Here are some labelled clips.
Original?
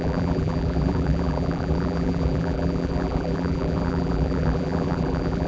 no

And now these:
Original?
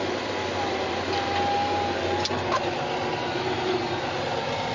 yes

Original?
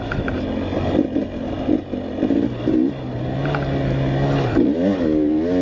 yes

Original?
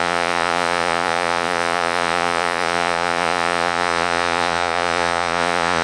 no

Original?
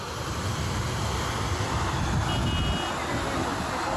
yes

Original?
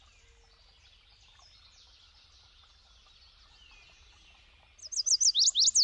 yes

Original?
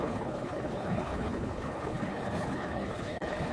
no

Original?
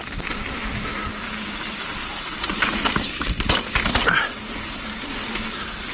yes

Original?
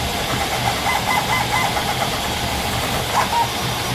no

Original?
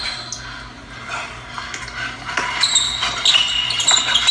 yes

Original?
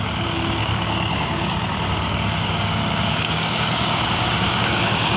no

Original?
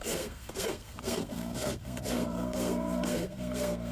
no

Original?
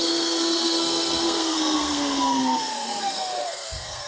no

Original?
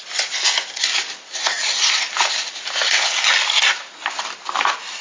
yes